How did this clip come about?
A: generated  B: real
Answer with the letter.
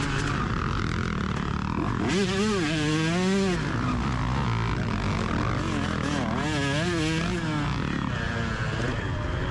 B